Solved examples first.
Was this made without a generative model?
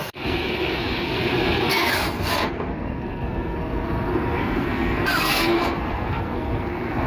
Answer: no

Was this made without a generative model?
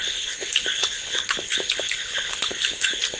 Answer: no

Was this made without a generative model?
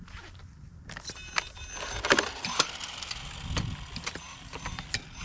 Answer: yes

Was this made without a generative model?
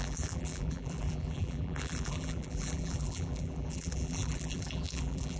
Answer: no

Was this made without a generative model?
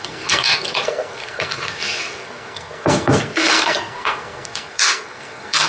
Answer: no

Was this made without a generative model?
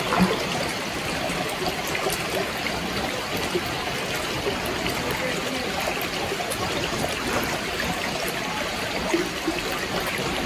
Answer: yes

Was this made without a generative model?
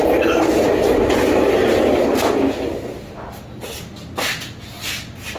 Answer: yes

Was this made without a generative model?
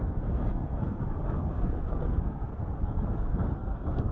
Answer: no